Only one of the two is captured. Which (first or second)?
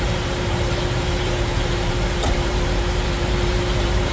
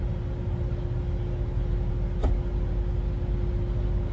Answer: second